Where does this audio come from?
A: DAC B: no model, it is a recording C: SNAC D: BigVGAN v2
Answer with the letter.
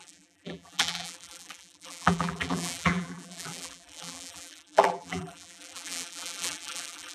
D